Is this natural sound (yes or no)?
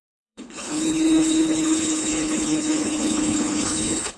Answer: no